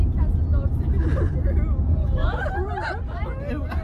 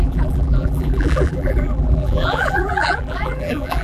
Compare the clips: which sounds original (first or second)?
first